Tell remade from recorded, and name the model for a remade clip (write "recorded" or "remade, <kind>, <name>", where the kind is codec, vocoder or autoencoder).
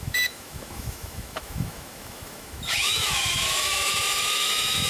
remade, autoencoder, DAC-VAE